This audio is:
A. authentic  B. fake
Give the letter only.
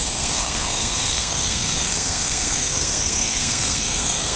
B